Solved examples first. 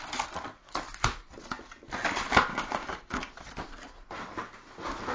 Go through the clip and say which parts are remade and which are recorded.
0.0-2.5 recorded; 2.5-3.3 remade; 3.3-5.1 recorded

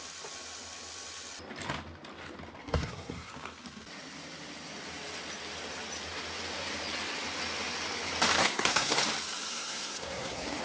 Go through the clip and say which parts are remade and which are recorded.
0.0-2.6 recorded; 2.6-3.3 remade; 3.3-8.4 recorded; 8.4-9.0 remade; 9.0-9.5 recorded; 9.5-10.6 remade

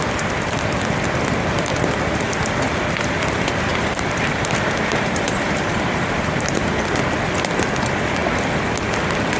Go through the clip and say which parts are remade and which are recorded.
0.0-3.7 recorded; 3.7-6.8 remade; 6.8-9.4 recorded

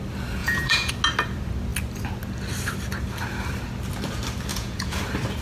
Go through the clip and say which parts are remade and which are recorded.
0.0-0.4 recorded; 0.4-0.9 remade; 0.9-4.5 recorded; 4.5-5.0 remade; 5.0-5.4 recorded

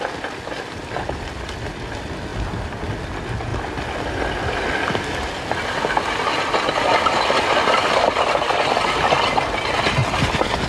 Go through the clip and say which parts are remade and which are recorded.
0.0-10.7 recorded

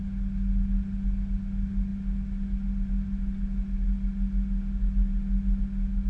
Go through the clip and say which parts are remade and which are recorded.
0.0-6.1 recorded

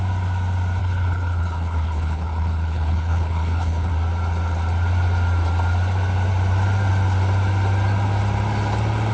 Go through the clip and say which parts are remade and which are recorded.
0.0-0.8 recorded; 0.8-3.9 remade; 3.9-9.1 recorded

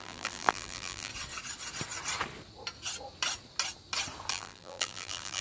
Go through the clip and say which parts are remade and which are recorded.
0.0-1.1 remade; 1.1-4.3 recorded; 4.3-5.4 remade